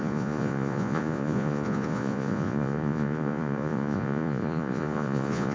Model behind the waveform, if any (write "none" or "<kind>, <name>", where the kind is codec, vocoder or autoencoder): vocoder, Vocos